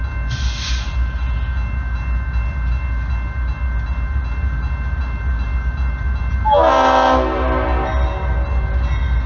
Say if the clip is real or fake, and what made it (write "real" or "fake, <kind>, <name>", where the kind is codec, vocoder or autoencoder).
real